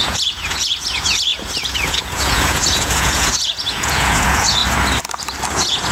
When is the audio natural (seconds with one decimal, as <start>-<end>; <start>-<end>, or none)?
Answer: 4.6-5.5